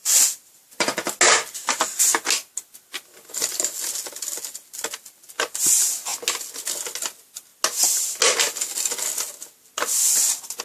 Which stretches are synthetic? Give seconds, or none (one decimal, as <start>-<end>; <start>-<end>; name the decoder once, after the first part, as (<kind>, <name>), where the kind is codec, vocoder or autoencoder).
none